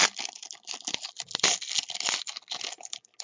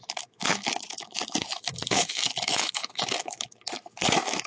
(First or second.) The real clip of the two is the first